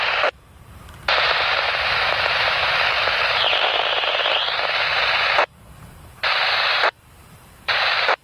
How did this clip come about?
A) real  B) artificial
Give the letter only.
B